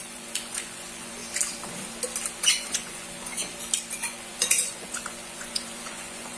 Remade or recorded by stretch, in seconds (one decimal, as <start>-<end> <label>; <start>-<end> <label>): 0.0-1.2 remade; 1.2-2.4 recorded; 2.4-3.4 remade; 3.4-3.9 recorded; 3.9-6.4 remade